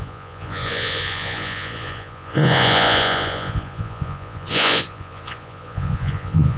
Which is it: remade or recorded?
remade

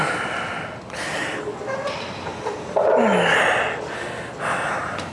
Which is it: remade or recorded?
recorded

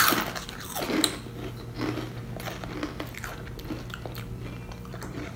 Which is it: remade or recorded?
recorded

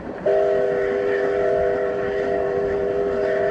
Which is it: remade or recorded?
recorded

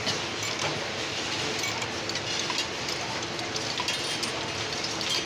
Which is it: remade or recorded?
recorded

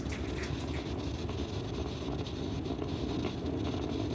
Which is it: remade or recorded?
recorded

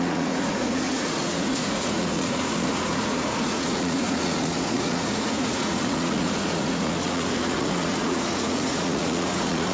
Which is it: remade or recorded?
remade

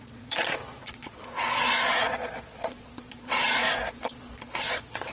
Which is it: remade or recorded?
remade